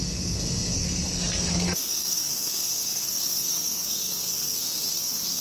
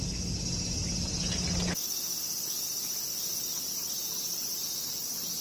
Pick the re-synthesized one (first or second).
first